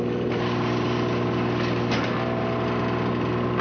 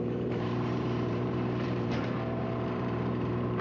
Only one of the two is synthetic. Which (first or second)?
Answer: second